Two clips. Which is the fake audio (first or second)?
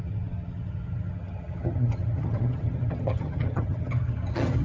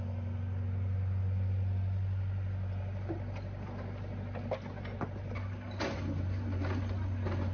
first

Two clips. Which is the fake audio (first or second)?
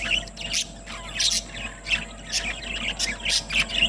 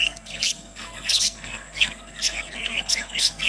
second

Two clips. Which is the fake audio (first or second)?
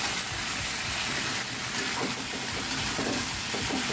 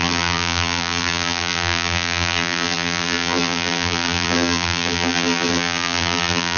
second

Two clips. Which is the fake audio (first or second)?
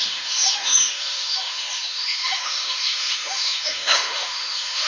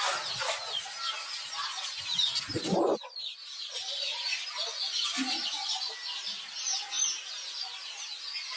first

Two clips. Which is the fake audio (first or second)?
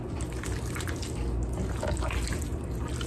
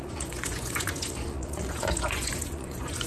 second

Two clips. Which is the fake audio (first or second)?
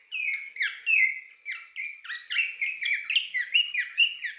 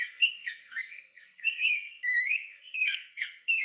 second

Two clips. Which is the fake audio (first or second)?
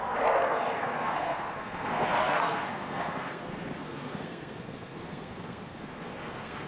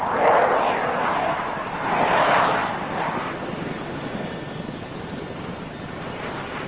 first